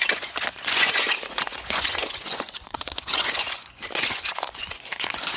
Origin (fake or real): fake